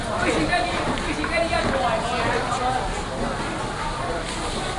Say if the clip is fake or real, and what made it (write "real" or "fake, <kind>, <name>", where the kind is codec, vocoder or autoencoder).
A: real